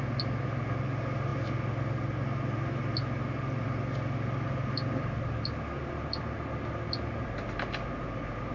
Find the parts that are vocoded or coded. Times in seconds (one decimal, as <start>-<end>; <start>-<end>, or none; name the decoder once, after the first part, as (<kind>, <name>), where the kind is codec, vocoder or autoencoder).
none